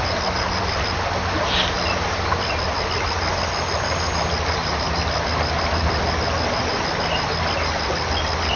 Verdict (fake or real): real